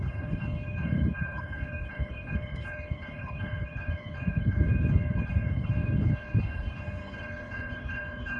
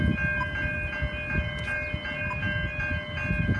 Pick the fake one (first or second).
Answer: first